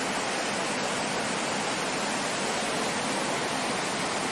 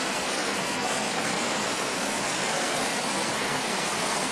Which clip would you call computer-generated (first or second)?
second